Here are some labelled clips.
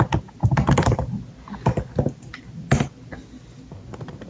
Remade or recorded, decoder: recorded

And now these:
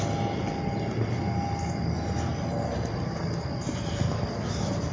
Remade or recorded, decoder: recorded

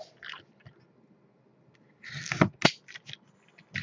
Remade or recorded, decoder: recorded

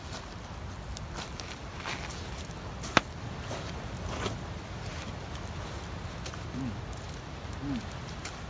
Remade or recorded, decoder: recorded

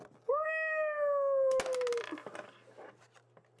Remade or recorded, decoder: recorded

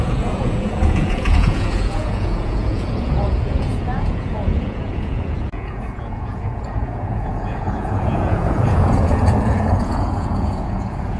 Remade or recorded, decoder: remade, vocoder, Vocos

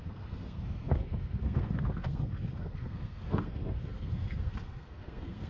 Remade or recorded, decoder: remade, codec, SNAC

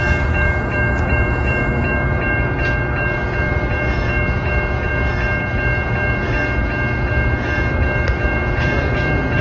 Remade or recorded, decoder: recorded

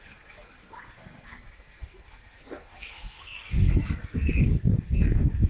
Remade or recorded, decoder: remade, codec, SNAC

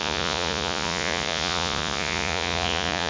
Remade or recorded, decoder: remade, vocoder, Vocos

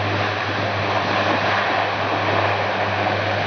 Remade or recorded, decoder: recorded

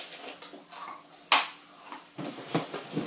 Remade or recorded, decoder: recorded